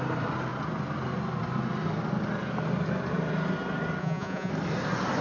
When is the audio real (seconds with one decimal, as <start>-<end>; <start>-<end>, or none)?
0.0-4.0; 4.5-5.2